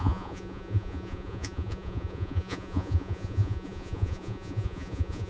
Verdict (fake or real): fake